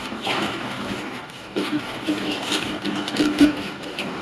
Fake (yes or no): yes